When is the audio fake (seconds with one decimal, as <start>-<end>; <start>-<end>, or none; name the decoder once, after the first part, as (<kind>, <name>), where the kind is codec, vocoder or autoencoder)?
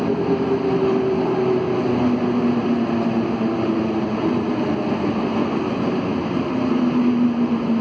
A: none